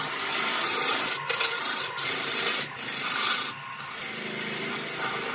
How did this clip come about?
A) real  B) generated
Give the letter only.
A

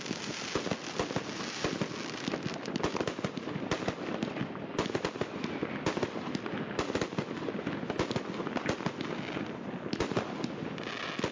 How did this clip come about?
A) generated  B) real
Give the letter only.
B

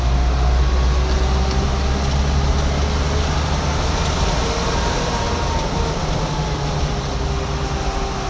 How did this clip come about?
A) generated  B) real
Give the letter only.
B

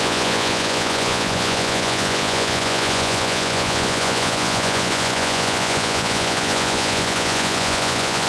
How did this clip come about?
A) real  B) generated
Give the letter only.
B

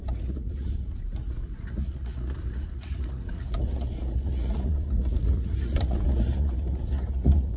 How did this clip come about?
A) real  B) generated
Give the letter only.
B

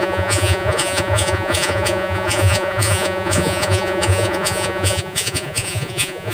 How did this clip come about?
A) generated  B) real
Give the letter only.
A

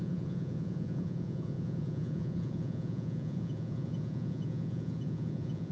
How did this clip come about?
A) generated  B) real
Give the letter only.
A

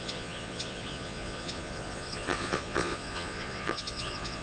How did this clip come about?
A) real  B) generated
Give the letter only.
B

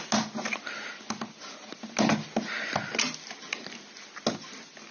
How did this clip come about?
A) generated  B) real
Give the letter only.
B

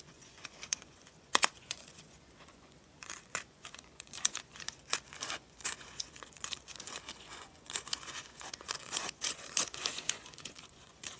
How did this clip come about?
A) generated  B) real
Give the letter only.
A